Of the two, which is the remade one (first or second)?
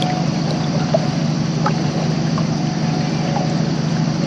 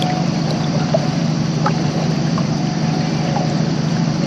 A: second